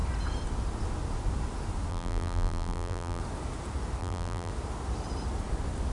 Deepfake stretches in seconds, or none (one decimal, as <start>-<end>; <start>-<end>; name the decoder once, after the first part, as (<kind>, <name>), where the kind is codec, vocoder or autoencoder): 1.9-3.2 (vocoder, BigVGAN v2); 4.0-4.5